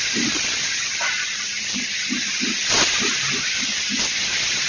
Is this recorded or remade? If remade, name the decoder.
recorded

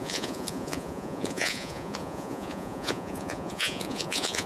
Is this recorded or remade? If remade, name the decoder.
remade, vocoder, Vocos